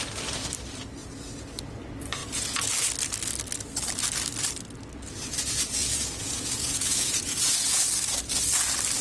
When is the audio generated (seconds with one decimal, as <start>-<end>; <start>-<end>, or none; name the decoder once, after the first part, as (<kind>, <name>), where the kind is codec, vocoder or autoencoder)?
2.2-2.7 (vocoder, Vocos); 5.8-7.8